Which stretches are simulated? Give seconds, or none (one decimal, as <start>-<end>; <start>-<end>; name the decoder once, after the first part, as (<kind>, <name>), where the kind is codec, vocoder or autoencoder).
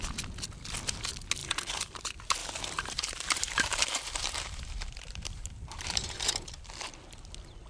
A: 1.4-2.0 (vocoder, BigVGAN v2); 2.4-6.7